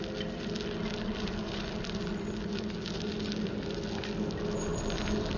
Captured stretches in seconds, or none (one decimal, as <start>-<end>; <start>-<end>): 0.0-5.4